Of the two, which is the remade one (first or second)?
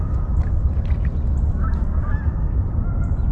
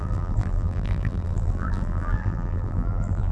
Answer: second